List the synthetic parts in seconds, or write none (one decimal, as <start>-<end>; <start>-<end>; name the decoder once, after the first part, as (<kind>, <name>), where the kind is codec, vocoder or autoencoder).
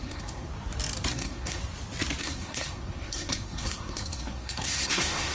0.0-0.5 (codec, SNAC); 1.1-1.6; 2.2-5.3